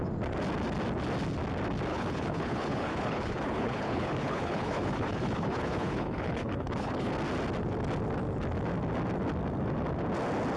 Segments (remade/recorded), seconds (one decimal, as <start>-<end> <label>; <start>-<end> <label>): 0.0-1.9 recorded; 1.9-7.1 remade; 7.1-10.6 recorded